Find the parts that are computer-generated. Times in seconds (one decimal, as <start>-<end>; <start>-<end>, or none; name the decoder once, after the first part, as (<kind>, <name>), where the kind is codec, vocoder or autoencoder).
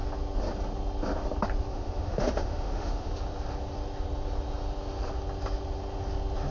1.7-3.1 (autoencoder, DAC-VAE)